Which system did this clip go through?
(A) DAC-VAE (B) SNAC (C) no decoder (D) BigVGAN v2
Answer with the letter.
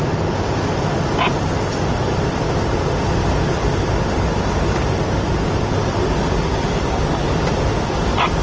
C